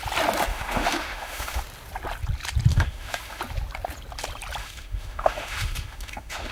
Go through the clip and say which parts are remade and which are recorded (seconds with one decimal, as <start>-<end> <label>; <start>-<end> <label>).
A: 0.0-0.5 recorded; 0.5-1.6 remade; 1.6-2.7 recorded; 2.7-3.4 remade; 3.4-4.6 recorded; 4.6-6.5 remade